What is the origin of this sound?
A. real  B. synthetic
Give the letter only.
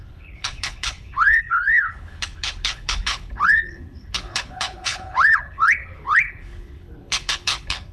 B